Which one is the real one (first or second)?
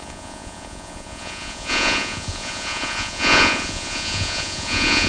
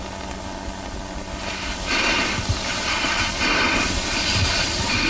second